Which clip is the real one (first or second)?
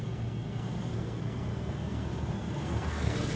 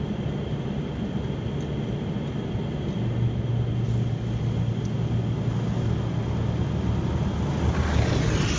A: second